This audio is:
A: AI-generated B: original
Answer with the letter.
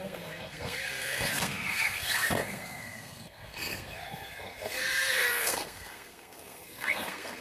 A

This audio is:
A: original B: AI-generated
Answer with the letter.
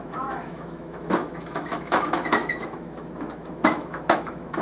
B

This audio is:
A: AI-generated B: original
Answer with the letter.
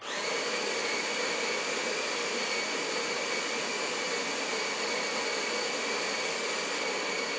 B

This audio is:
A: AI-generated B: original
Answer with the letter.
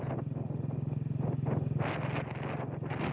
B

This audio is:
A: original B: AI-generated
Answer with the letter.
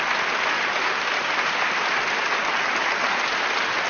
A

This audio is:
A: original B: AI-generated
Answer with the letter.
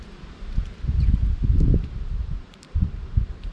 B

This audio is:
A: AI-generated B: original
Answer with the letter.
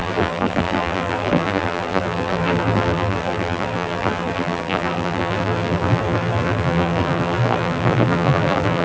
A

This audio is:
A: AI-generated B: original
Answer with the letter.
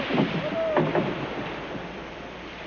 B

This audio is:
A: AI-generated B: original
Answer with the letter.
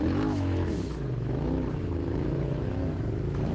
A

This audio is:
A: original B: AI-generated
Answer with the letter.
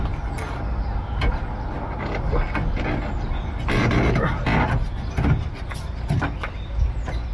A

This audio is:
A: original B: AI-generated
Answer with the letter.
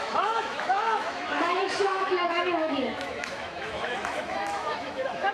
B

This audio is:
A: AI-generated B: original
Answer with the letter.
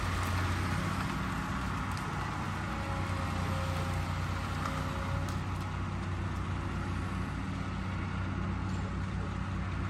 B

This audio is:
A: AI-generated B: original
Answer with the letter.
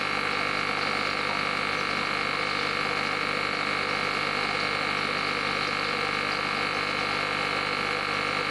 B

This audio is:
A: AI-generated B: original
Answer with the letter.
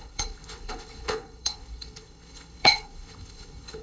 A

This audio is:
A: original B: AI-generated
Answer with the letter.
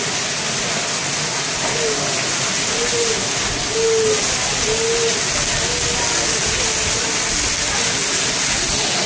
A